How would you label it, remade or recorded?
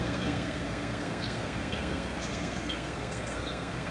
remade